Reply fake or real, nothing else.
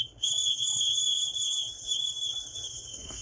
fake